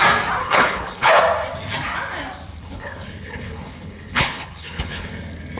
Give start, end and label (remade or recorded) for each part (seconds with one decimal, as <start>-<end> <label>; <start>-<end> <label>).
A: 0.0-0.4 recorded; 0.4-1.2 remade; 1.2-2.6 recorded; 2.6-5.1 remade; 5.1-5.6 recorded